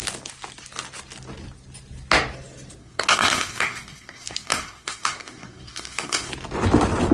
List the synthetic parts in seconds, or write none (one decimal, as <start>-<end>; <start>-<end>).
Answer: 2.8-6.3